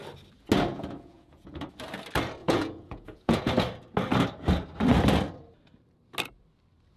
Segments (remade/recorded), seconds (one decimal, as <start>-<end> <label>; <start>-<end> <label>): 0.0-0.7 recorded; 0.7-1.7 remade; 1.7-2.4 recorded; 2.4-3.5 remade; 3.5-7.0 recorded